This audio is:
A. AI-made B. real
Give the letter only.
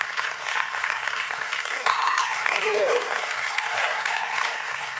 A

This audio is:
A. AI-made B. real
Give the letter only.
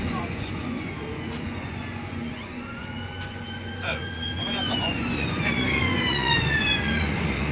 A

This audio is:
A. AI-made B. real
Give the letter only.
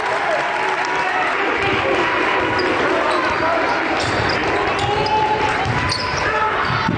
B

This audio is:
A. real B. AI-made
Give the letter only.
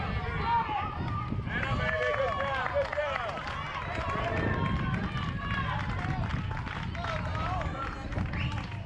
A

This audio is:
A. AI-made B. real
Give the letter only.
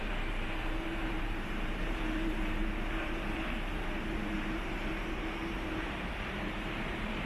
A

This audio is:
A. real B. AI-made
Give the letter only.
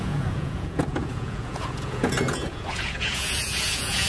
B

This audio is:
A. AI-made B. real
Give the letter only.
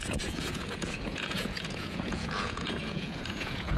A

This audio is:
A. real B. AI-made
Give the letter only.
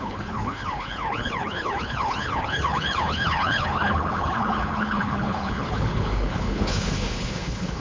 B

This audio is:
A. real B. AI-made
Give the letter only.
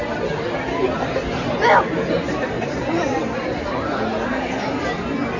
A